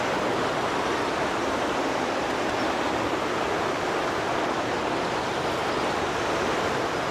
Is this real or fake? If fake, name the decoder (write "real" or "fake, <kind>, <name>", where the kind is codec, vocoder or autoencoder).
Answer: real